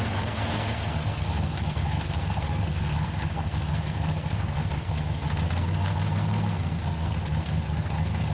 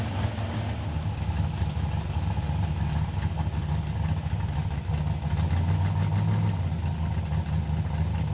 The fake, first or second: first